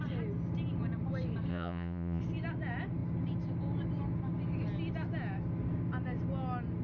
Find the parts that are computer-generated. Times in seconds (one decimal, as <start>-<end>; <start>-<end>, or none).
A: 1.5-2.2